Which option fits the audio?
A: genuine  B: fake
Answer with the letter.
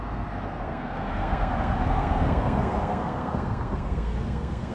B